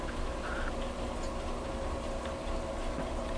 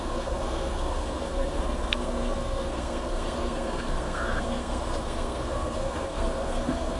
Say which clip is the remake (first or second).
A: second